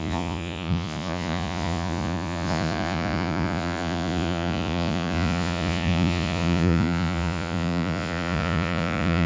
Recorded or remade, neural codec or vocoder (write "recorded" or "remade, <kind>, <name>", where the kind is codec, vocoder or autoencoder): remade, vocoder, Vocos